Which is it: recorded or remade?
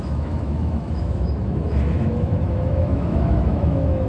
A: remade